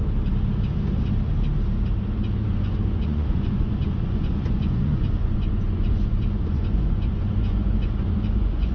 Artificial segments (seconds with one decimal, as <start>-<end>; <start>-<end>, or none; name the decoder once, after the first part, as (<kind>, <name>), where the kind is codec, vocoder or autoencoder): 2.5-8.7 (vocoder, Vocos)